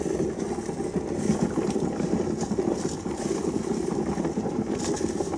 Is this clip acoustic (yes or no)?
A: yes